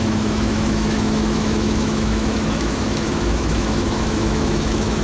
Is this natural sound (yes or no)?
no